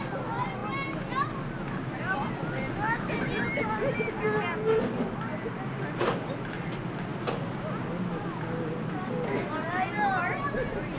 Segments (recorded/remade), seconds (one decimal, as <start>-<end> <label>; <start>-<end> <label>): 0.0-11.0 recorded